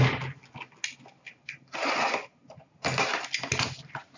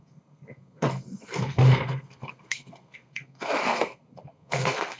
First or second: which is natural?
first